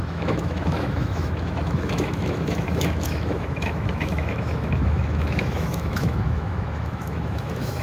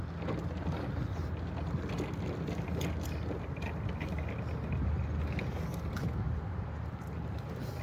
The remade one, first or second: first